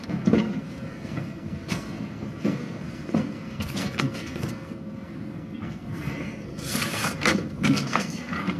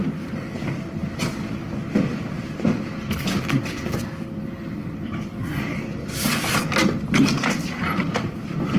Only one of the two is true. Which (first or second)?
second